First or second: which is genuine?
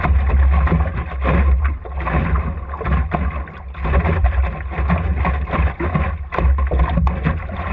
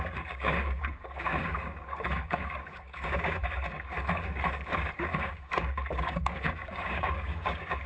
first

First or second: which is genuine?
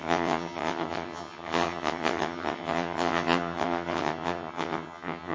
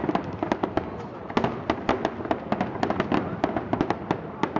second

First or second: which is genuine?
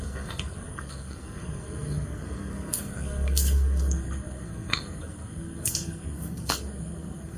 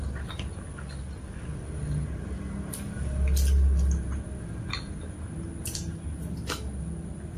second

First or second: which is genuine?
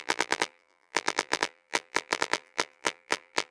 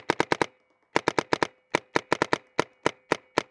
second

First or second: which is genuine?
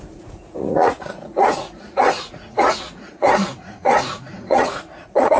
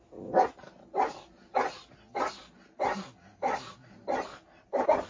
second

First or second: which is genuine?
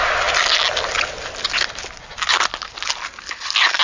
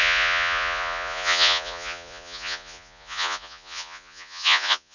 first